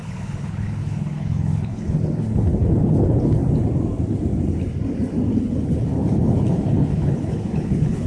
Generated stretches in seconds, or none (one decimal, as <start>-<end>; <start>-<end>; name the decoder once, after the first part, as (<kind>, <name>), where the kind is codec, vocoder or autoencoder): 0.0-3.4 (codec, HILCodec); 5.4-8.1